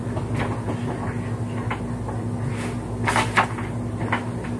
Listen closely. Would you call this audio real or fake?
real